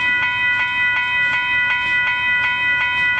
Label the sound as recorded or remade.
recorded